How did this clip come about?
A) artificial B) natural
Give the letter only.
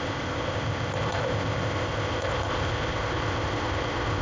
A